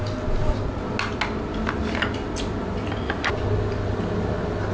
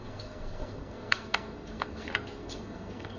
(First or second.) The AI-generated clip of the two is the second